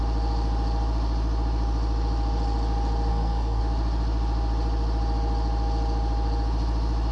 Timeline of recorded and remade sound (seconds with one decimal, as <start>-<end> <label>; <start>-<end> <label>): 0.0-3.1 recorded; 3.1-3.6 remade; 3.6-7.1 recorded